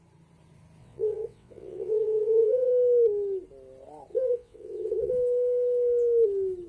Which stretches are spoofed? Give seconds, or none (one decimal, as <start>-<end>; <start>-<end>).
0.8-2.7; 4.1-5.1